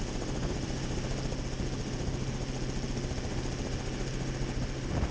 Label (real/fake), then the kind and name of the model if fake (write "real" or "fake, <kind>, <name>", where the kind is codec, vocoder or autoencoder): real